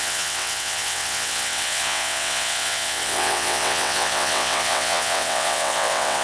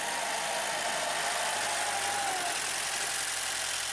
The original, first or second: second